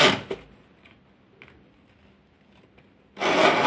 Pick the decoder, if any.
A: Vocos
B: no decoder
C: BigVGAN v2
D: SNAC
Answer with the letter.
B